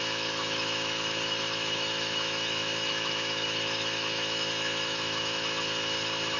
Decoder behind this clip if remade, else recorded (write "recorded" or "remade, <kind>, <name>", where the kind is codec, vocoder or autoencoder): remade, autoencoder, DAC-VAE